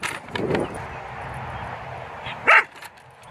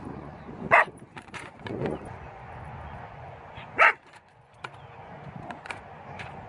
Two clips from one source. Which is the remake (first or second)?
second